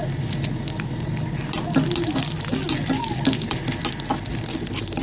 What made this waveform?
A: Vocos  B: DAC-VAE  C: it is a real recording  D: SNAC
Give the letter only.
C